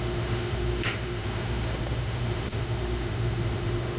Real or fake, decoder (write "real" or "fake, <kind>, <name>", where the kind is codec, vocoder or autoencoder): fake, autoencoder, DAC-VAE